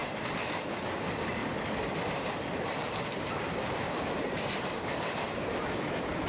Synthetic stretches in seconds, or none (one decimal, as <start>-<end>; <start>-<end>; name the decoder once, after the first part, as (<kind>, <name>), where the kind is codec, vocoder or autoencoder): 0.0-0.6 (vocoder, BigVGAN v2); 1.4-4.7